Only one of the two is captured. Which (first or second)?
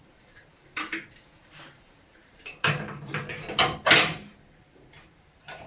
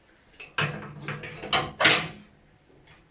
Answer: second